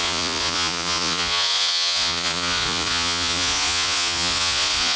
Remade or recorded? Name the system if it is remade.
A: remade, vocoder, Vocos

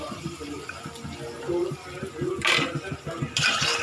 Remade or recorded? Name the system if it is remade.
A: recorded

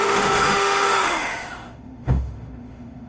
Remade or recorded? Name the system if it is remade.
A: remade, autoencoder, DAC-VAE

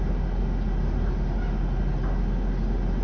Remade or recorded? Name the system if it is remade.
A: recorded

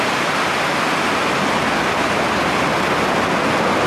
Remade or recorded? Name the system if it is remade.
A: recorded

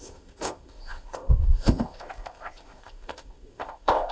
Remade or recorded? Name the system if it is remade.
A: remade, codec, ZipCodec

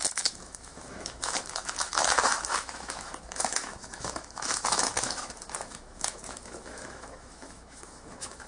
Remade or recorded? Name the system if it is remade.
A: remade, autoencoder, DAC-VAE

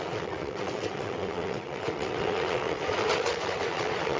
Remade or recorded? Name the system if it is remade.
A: remade, vocoder, WaveNeXt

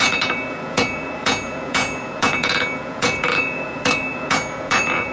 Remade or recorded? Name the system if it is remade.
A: remade, vocoder, Vocos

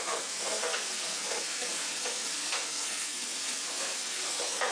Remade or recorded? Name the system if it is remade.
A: remade, codec, SNAC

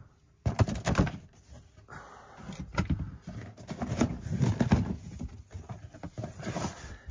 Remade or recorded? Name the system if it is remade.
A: recorded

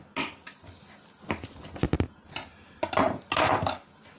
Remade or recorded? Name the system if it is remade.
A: recorded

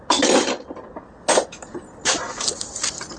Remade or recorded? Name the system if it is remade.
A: recorded